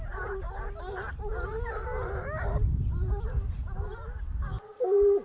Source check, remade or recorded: recorded